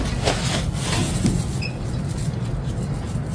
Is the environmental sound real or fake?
real